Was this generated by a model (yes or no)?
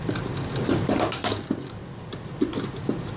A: no